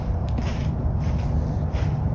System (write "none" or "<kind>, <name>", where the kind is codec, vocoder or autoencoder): none